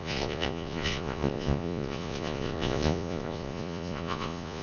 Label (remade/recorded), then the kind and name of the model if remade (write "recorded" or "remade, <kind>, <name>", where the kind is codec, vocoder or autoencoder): remade, vocoder, Vocos